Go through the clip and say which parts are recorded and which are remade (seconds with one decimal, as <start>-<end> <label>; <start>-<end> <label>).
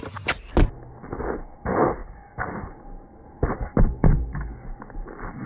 0.0-5.5 recorded